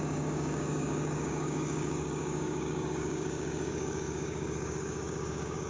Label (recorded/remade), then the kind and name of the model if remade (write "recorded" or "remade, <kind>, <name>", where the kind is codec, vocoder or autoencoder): remade, codec, DAC